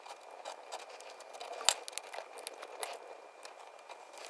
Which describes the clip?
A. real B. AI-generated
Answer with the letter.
A